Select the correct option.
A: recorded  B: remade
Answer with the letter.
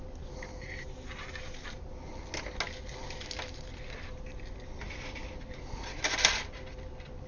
A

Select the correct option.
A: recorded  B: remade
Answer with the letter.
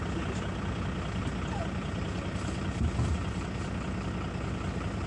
A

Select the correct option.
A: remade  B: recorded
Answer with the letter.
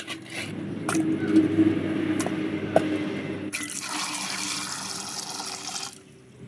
B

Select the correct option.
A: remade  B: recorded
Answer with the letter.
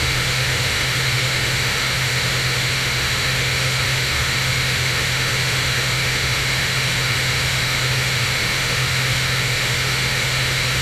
A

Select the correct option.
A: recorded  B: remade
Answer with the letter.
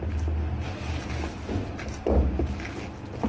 A